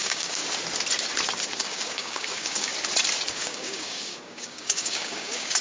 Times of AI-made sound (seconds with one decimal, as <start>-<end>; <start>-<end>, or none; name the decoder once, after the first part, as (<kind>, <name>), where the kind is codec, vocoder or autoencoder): 0.0-0.4 (codec, DAC); 1.6-2.7; 3.3-5.6